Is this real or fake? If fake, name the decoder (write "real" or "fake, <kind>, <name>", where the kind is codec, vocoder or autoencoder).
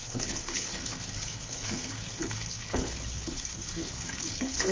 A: fake, codec, HILCodec